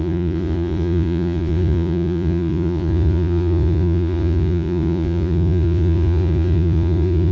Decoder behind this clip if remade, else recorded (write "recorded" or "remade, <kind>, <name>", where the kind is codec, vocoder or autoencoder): remade, vocoder, Vocos